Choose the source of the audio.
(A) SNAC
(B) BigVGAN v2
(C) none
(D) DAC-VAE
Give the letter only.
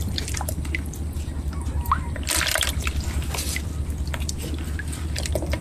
C